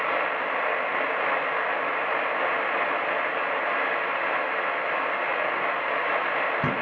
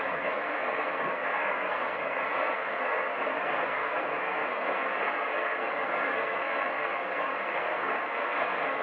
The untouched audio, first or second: first